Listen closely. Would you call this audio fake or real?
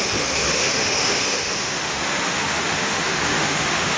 fake